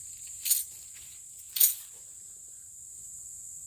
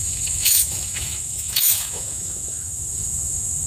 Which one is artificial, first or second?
second